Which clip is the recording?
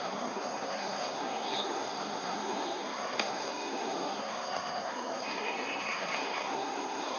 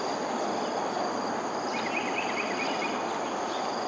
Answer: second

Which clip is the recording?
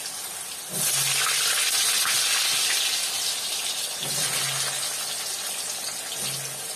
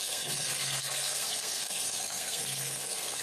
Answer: first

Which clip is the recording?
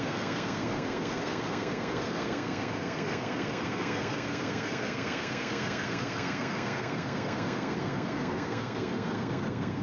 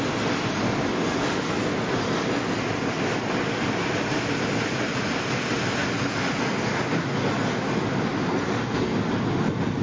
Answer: second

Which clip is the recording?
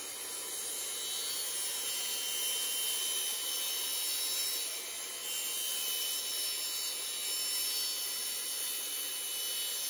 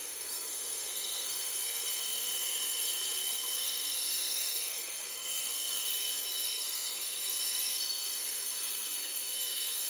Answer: first